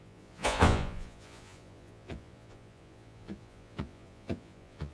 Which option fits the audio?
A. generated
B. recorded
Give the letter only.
A